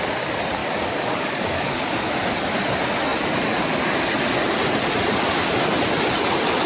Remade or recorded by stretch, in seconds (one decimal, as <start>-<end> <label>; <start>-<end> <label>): 0.0-0.6 recorded; 0.6-2.1 remade; 2.1-6.7 recorded